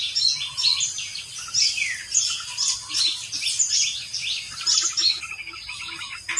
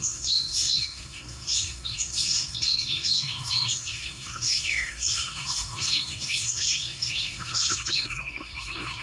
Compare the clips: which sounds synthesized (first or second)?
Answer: second